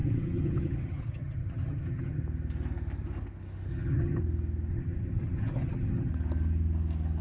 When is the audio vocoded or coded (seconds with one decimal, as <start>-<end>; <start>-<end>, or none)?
0.0-2.2; 3.7-4.2; 4.7-6.1